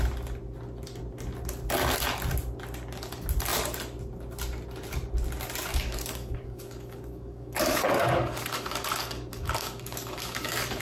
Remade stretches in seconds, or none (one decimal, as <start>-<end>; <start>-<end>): 5.7-10.8